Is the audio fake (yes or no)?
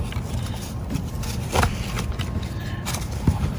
yes